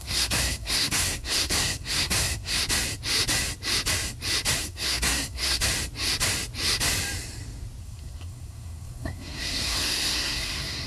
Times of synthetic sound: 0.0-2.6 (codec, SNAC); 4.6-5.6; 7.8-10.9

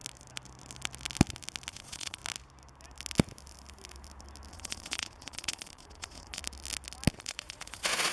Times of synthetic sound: 1.7-2.2 (vocoder, Vocos); 4.5-6.4; 7.1-8.1

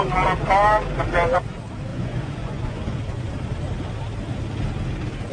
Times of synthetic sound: 1.9-3.3 (vocoder, Vocos)

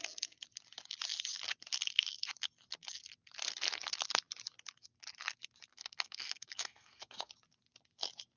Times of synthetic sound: 5.7-7.3 (codec, SNAC)

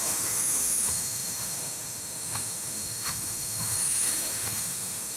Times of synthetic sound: 0.0-5.2 (autoencoder, DAC-VAE)

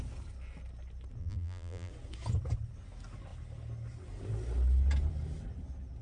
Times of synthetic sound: 1.2-1.9 (vocoder, BigVGAN v2)